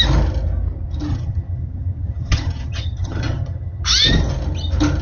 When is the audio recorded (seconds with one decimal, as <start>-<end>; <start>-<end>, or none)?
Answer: 0.0-1.1; 3.8-5.0